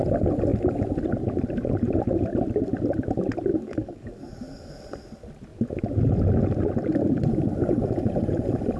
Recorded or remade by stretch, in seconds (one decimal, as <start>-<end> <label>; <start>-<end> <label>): 0.0-3.5 recorded; 3.5-4.7 remade; 4.7-8.8 recorded